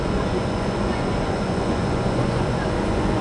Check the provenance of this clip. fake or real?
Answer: fake